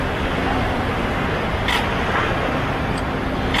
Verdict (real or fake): real